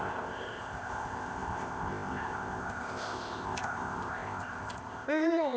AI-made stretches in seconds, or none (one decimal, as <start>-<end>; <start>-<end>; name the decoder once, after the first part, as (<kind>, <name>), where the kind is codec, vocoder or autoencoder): 0.0-5.6 (codec, ZipCodec)